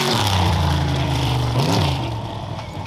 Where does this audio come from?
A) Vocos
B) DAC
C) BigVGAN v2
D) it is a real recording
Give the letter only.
C